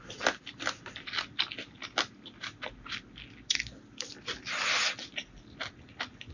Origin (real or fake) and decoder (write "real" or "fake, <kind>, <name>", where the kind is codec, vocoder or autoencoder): real